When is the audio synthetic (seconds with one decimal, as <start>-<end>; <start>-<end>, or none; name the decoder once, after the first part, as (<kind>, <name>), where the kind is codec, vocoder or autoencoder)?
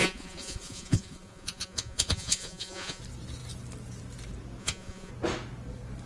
0.0-3.0 (vocoder, Vocos); 4.6-5.1